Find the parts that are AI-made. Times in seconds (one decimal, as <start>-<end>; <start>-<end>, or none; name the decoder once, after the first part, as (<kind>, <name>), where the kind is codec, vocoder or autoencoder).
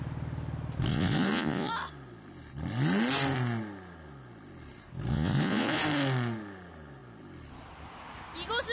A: 0.9-1.7 (vocoder, Vocos); 5.1-5.8